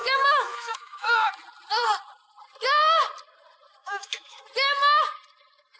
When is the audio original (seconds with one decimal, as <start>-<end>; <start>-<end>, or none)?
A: 1.3-3.8; 4.4-5.8